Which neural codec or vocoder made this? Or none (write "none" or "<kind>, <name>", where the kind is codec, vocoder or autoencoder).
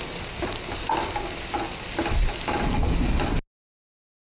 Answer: none